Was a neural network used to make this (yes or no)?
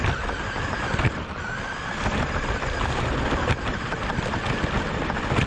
no